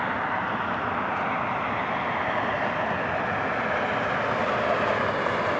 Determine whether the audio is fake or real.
real